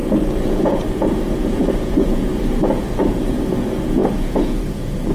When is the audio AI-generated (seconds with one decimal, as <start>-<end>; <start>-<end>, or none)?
0.5-2.3; 3.0-5.1